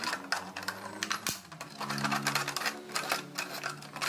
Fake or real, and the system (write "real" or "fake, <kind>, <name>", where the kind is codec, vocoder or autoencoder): real